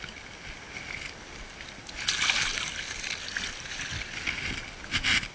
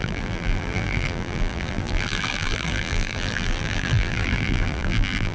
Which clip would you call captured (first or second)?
first